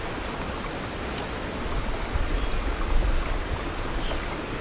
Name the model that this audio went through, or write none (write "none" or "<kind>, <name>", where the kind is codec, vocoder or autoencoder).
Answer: none